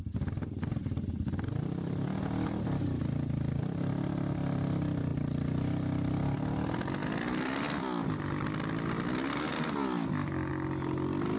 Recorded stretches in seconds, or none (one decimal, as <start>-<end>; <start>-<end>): 0.0-11.4